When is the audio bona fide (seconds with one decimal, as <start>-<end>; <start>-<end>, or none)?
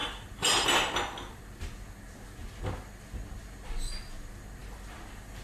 1.4-4.6